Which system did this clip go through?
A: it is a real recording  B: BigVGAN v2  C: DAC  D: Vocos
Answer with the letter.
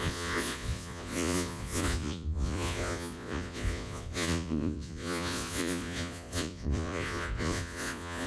D